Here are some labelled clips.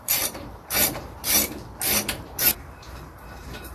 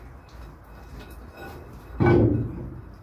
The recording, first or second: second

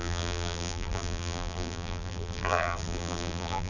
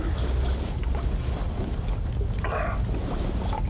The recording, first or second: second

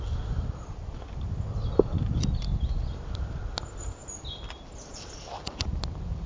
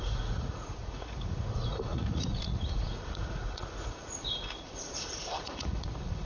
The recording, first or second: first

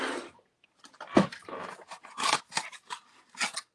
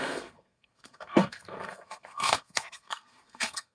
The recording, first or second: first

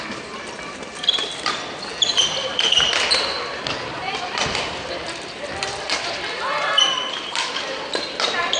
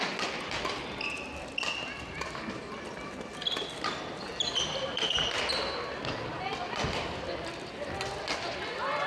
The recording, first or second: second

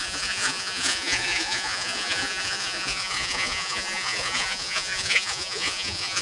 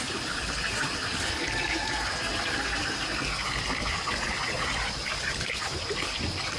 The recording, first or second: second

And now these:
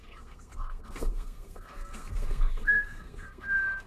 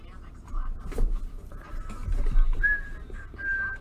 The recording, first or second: second